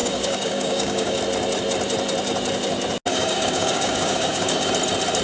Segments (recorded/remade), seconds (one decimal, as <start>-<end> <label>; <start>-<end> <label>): 0.0-1.2 remade; 1.2-3.1 recorded; 3.1-4.7 remade; 4.7-5.2 recorded